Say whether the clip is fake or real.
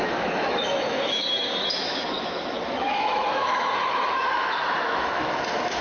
fake